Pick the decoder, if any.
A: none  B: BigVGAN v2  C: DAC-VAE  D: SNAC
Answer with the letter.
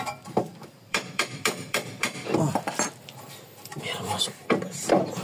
B